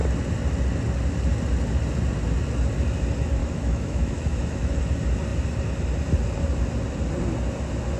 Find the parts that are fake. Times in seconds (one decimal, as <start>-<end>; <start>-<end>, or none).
3.4-4.8